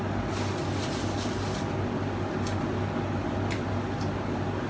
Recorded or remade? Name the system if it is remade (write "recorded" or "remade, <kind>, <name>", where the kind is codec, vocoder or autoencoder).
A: recorded